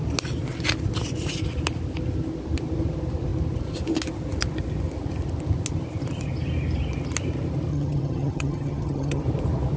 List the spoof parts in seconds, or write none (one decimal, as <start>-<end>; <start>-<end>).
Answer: 7.7-9.2